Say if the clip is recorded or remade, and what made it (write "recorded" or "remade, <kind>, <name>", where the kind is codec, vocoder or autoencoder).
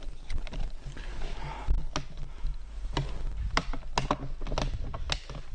recorded